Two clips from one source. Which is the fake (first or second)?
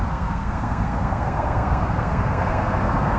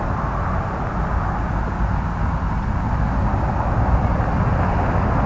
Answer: first